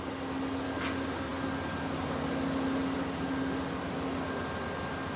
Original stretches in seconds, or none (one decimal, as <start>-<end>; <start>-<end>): 0.0-5.2